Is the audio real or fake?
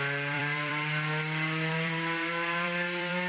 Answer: fake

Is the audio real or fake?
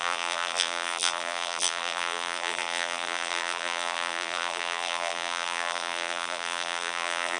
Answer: fake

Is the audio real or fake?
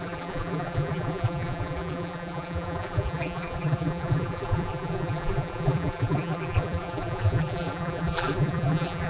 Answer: fake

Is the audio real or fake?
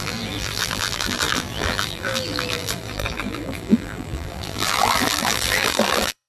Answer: fake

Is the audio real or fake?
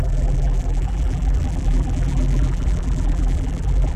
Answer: fake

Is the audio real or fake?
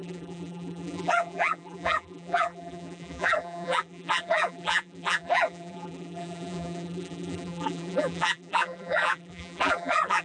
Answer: fake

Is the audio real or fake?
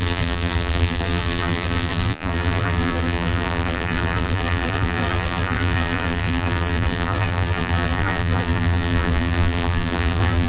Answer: fake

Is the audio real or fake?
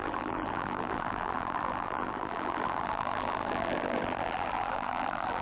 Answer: fake